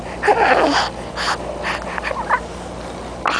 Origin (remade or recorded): recorded